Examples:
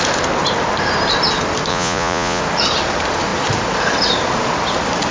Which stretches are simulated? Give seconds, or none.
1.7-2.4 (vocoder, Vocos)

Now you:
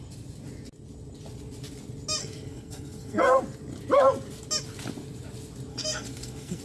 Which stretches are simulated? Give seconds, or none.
2.2-3.4 (codec, SNAC); 5.7-6.6